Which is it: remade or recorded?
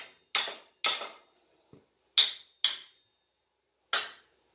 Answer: recorded